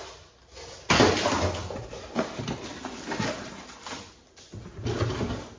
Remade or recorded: recorded